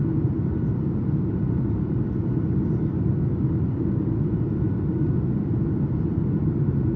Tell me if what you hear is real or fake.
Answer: real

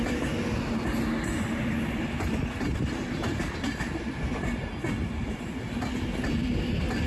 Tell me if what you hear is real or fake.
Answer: real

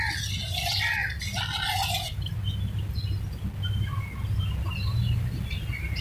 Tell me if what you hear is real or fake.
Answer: real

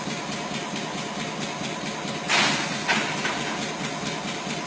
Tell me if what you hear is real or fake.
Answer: real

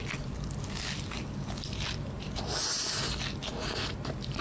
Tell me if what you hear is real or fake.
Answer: real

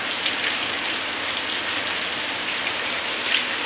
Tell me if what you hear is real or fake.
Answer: real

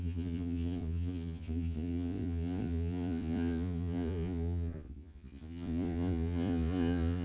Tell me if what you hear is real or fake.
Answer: fake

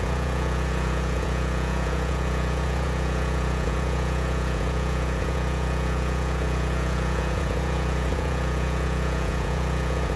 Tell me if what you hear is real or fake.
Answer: fake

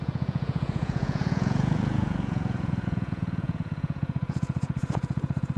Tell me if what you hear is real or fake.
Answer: fake